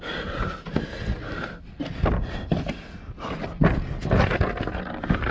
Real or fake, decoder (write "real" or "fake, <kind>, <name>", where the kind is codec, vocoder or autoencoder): real